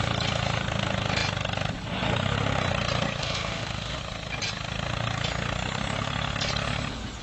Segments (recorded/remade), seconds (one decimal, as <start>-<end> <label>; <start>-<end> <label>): 0.0-3.2 recorded; 3.2-4.0 remade; 4.0-7.2 recorded